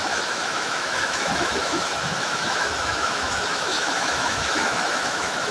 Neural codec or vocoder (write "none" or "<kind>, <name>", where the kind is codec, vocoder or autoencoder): autoencoder, DAC-VAE